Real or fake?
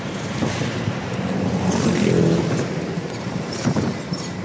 fake